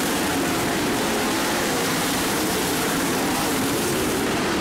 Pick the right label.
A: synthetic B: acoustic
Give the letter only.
A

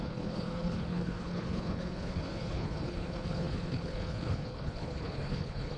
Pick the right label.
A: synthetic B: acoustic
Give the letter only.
A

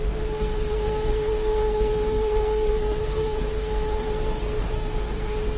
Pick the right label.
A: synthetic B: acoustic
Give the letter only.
A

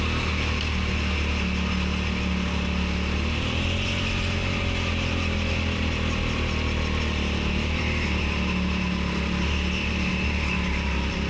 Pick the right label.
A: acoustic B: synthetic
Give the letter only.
A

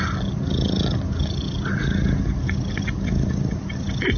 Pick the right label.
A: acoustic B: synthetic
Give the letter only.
A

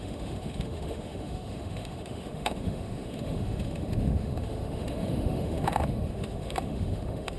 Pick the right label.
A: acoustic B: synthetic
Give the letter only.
B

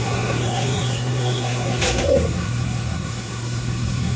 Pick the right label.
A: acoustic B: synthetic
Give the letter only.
B